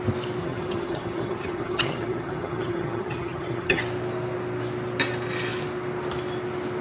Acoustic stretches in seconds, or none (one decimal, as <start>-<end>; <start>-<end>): 0.0-0.4; 3.8-6.8

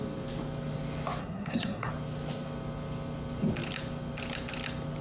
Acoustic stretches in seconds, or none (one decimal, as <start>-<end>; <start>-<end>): 0.0-1.2; 1.9-5.0